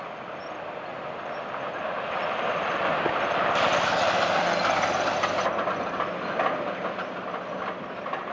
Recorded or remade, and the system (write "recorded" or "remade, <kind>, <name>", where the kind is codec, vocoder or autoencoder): recorded